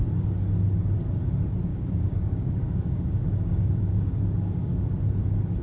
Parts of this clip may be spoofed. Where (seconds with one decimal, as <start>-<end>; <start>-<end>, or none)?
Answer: 1.7-5.0